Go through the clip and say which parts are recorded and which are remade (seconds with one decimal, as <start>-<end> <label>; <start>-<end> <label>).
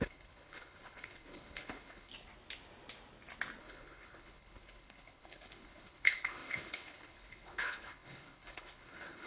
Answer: 0.0-2.1 remade; 2.1-3.6 recorded; 3.6-9.3 remade